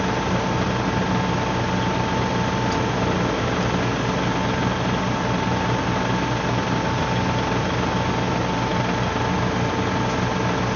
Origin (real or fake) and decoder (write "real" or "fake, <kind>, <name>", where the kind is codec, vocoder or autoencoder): real